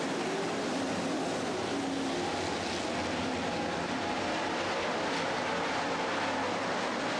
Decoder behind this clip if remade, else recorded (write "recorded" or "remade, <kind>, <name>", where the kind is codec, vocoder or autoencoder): recorded